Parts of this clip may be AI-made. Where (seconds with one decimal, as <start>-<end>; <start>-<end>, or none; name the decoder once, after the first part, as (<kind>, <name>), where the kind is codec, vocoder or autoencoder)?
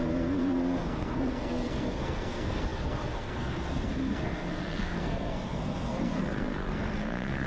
0.0-7.5 (codec, SNAC)